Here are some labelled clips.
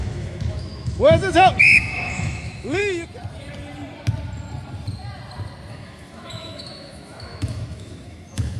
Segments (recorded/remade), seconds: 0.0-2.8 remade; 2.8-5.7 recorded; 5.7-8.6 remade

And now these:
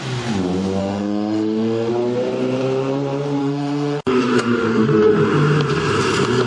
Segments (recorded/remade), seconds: 0.0-0.8 recorded; 0.8-1.9 remade; 1.9-3.4 recorded; 3.4-5.2 remade; 5.2-6.5 recorded

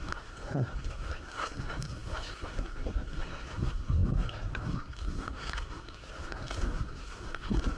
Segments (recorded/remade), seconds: 0.0-7.8 remade

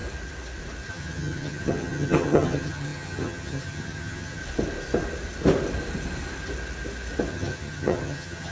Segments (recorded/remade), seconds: 0.0-0.9 recorded; 0.9-4.4 remade; 4.4-7.3 recorded; 7.3-8.5 remade